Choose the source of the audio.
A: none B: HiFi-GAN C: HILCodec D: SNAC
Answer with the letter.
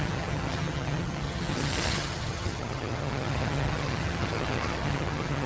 B